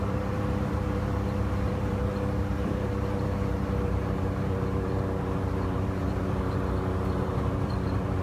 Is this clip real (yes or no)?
no